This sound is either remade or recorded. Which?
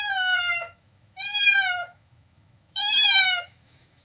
remade